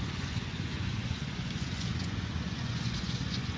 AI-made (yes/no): yes